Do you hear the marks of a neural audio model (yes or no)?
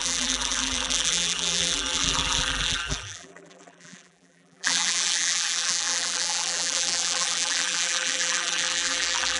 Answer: yes